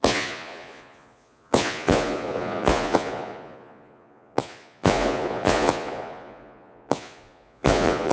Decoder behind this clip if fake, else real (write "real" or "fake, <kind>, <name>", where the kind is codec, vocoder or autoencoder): fake, vocoder, Vocos